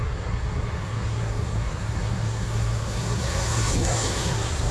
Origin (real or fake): fake